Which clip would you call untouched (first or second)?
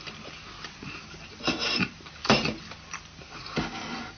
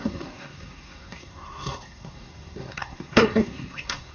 first